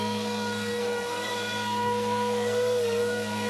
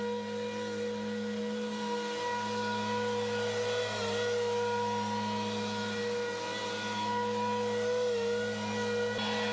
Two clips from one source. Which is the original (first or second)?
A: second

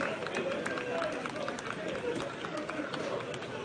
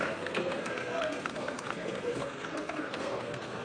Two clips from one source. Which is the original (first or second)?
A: first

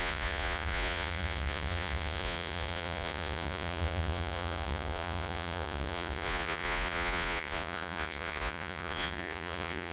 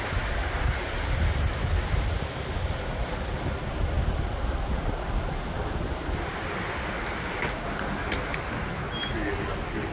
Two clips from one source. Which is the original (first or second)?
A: second